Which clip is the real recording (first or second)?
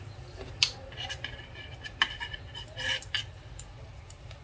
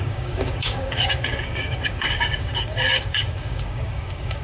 first